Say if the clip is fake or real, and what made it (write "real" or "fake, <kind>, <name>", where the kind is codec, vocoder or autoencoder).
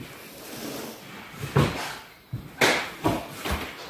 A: real